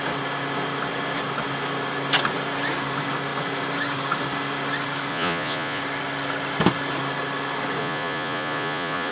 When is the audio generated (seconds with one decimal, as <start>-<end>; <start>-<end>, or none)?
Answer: 5.1-5.8; 7.8-9.1